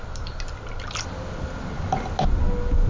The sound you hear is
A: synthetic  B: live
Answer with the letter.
B